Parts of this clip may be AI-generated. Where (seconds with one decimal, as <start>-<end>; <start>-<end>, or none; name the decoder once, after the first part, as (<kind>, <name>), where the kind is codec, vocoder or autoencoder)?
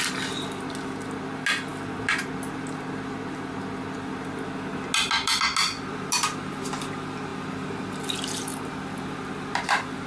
none